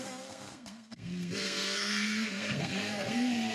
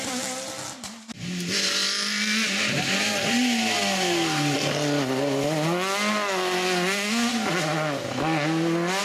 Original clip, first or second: second